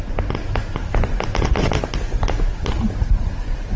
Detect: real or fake real